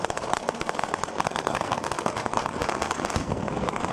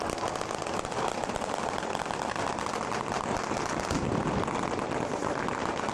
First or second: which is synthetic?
first